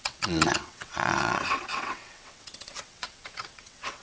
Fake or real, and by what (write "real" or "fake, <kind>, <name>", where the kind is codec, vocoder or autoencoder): fake, vocoder, WaveNeXt